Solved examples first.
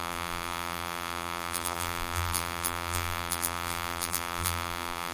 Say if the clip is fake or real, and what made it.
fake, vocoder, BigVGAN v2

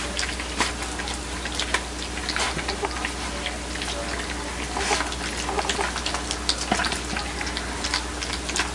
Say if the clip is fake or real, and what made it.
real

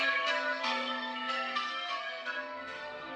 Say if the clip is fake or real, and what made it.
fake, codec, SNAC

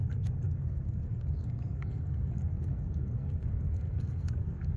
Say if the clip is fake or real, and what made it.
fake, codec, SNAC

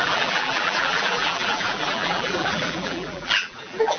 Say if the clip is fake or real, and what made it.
fake, vocoder, BigVGAN v2